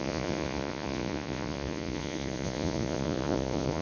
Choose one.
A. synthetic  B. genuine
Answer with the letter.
A